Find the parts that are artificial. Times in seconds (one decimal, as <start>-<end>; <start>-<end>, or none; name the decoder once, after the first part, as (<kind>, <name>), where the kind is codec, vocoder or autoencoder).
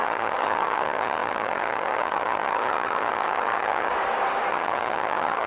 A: 0.0-3.9 (vocoder, HiFi-GAN); 4.5-5.5